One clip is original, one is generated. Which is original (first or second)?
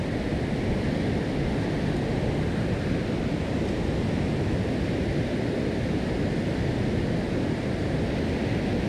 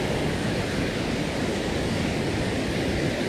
first